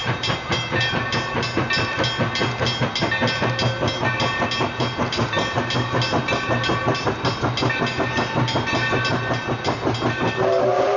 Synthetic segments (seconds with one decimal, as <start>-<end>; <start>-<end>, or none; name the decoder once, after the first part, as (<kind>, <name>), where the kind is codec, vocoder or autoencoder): 0.0-1.0 (vocoder, BigVGAN v2)